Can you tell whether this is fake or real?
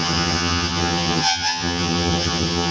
fake